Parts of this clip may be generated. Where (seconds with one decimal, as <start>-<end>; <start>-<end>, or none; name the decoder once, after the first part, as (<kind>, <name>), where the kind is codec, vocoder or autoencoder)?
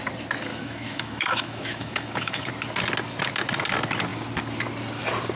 0.5-2.5 (autoencoder, DAC-VAE)